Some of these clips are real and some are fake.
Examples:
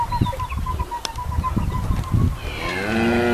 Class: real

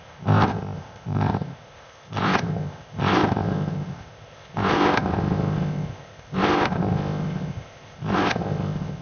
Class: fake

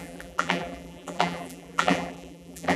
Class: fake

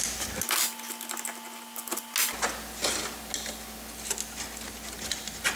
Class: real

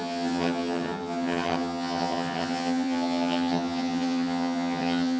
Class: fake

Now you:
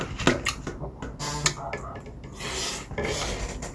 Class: real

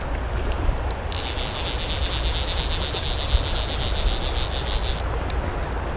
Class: real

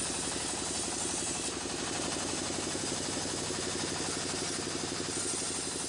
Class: real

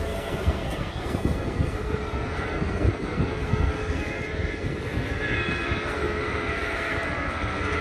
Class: fake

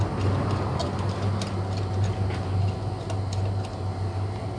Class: real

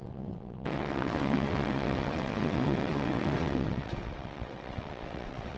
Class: fake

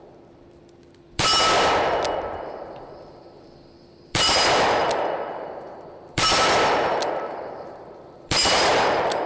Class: fake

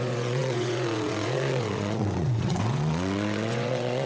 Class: fake